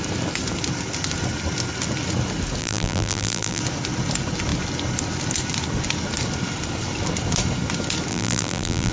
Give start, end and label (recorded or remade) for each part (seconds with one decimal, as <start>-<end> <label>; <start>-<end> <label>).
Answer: 0.0-2.6 recorded; 2.6-3.6 remade; 3.6-8.1 recorded; 8.1-8.9 remade

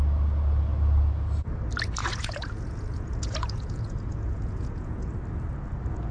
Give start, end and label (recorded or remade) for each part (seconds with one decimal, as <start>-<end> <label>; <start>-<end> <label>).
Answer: 0.0-2.0 recorded; 2.0-5.1 remade; 5.1-6.1 recorded

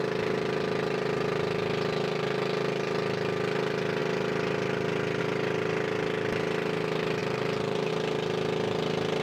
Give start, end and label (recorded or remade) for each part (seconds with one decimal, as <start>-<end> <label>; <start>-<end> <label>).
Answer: 0.0-7.2 recorded; 7.2-7.9 remade; 7.9-9.2 recorded